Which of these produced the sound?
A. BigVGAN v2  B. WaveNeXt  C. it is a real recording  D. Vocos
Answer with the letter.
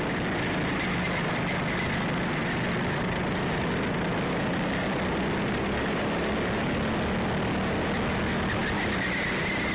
C